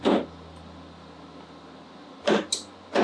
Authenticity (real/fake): real